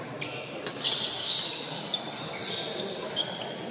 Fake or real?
real